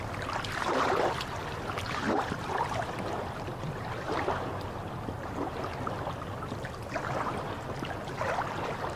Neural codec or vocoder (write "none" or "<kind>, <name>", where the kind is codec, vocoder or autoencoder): none